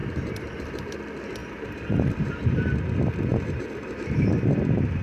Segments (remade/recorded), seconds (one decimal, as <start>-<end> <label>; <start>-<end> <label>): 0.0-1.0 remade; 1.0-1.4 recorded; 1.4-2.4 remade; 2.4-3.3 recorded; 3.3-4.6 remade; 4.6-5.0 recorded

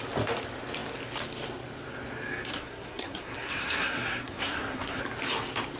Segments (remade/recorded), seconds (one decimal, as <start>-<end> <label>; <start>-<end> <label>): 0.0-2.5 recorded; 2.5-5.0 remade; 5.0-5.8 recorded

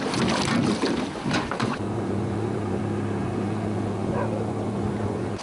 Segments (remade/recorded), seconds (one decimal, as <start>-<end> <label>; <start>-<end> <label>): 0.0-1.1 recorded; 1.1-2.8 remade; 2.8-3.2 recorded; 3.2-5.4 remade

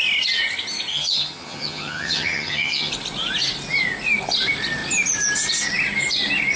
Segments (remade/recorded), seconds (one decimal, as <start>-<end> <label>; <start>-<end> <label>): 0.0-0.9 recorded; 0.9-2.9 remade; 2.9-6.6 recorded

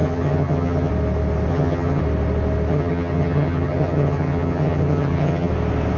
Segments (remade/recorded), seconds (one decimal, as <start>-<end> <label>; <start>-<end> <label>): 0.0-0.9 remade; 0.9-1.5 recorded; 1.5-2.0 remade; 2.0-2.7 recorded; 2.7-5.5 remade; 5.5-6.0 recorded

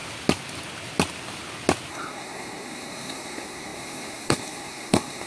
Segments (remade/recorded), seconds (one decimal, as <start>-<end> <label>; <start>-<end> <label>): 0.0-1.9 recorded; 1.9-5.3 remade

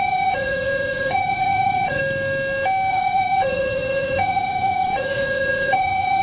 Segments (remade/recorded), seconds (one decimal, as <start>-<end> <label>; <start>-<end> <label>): 0.0-2.0 remade; 2.0-2.9 recorded; 2.9-6.2 remade